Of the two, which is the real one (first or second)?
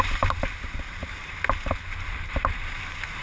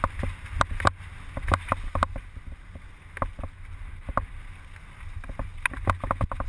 second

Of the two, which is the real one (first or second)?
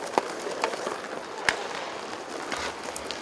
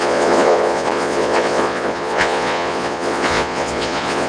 first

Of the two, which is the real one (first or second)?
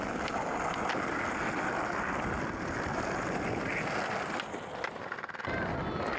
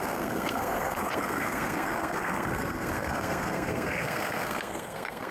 first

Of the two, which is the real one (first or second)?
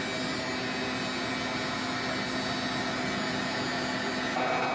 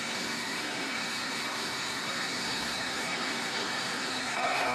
first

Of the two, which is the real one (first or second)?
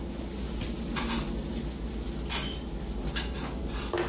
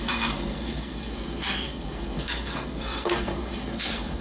first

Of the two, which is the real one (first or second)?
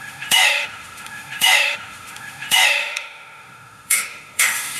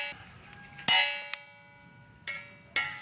second